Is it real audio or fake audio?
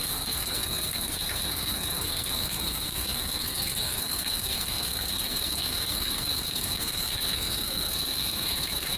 fake